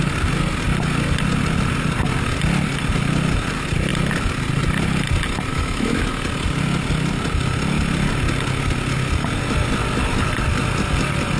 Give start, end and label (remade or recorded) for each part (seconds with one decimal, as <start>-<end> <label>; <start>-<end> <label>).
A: 0.0-5.5 recorded; 5.5-6.0 remade; 6.0-11.4 recorded